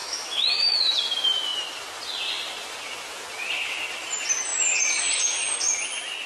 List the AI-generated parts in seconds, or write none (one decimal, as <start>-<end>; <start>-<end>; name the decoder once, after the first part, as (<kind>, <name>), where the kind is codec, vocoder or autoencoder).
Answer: 0.0-0.9 (autoencoder, DAC-VAE)